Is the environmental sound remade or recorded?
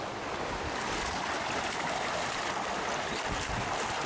recorded